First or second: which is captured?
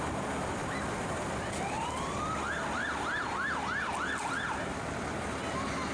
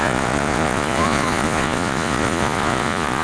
first